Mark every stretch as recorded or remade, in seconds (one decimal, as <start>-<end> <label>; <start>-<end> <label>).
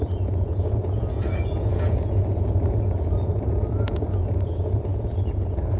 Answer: 0.0-5.8 remade